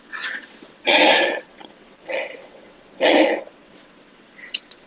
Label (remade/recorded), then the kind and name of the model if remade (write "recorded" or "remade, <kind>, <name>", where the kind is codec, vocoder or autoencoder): remade, vocoder, WaveNeXt